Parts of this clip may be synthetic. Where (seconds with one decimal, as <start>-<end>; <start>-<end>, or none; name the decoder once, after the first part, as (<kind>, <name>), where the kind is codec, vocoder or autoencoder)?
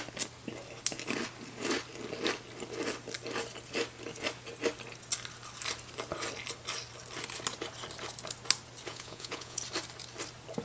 8.9-9.6 (vocoder, Vocos)